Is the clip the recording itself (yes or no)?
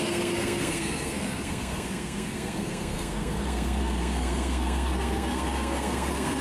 no